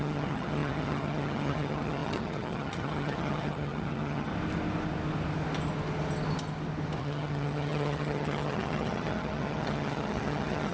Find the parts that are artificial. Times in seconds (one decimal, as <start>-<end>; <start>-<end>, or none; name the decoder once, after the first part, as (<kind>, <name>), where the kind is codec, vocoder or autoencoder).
0.0-4.3 (vocoder, HiFi-GAN); 7.0-10.7